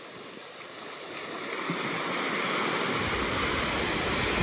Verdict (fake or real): real